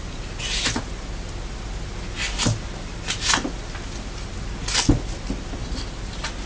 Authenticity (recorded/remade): recorded